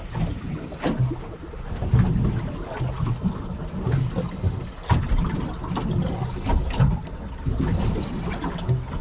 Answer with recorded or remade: recorded